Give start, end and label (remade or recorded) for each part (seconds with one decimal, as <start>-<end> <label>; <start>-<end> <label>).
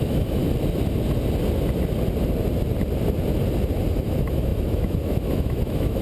0.0-0.4 remade; 0.4-4.0 recorded; 4.0-6.0 remade